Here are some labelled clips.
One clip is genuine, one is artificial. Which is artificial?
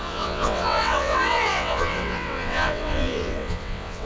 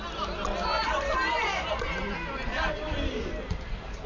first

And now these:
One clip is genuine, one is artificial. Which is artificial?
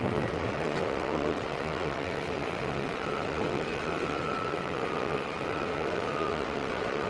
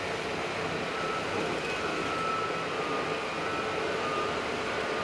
first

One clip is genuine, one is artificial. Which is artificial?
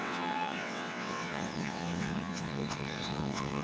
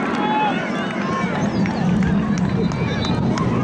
first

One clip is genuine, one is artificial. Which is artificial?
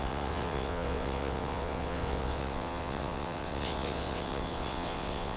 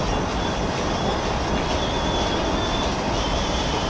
first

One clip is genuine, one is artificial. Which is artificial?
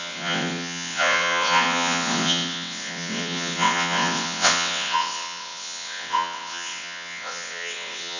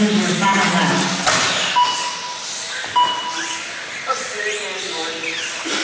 first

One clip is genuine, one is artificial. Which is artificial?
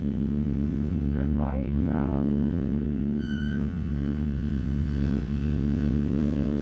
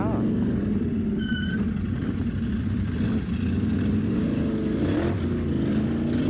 first